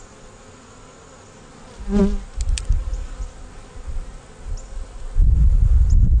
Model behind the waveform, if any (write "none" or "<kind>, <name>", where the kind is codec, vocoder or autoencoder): none